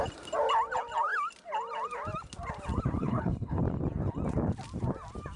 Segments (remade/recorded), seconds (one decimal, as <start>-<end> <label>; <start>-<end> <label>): 0.0-3.0 recorded; 3.0-3.6 remade; 3.6-5.4 recorded

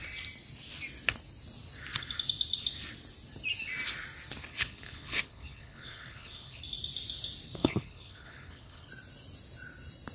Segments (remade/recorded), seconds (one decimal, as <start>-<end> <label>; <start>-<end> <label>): 0.0-4.5 recorded; 4.5-6.6 remade; 6.6-7.6 recorded; 7.6-8.9 remade; 8.9-10.1 recorded

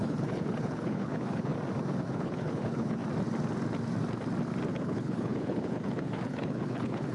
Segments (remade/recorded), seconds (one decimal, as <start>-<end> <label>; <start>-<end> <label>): 0.0-1.5 remade; 1.5-2.1 recorded; 2.1-3.0 remade; 3.0-4.7 recorded; 4.7-7.1 remade

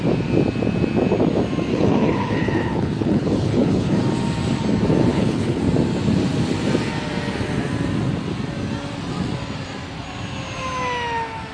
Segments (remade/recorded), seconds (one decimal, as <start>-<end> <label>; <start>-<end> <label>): 0.0-1.7 recorded; 1.7-4.0 remade; 4.0-5.1 recorded; 5.1-5.6 remade; 5.6-11.5 recorded

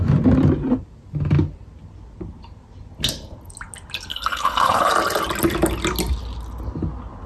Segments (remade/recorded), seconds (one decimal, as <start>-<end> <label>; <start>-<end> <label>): 0.0-4.1 recorded; 4.1-4.9 remade; 4.9-7.3 recorded